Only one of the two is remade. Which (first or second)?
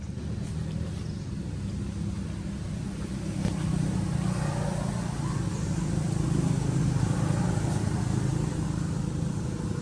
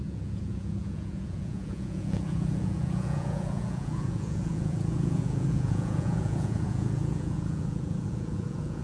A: second